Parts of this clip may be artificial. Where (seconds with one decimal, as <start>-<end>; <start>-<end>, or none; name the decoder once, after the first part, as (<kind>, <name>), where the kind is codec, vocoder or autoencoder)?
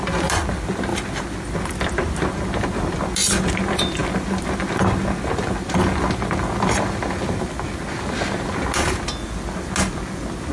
none